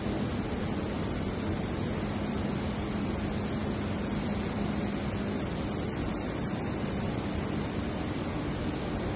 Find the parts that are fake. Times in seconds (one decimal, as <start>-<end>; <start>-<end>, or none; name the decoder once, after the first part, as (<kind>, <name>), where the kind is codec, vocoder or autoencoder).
none

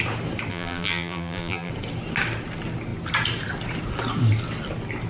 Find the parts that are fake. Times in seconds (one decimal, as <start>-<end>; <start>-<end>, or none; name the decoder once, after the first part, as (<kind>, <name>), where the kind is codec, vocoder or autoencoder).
0.5-1.7 (vocoder, BigVGAN v2)